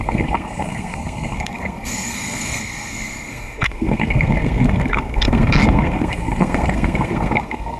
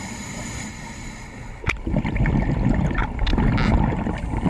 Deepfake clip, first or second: first